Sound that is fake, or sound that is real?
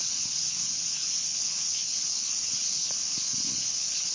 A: fake